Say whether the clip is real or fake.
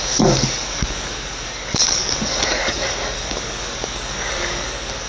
fake